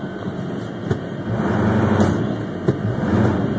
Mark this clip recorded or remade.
recorded